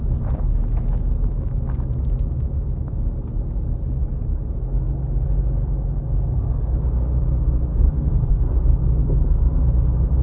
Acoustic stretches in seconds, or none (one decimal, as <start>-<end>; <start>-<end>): 0.0-7.7; 8.3-10.2

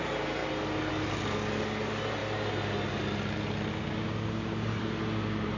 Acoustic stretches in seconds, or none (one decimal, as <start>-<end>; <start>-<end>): 0.0-3.7; 4.8-5.6

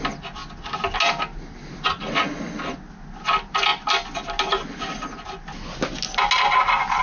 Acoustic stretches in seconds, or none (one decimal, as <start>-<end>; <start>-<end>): 0.0-7.0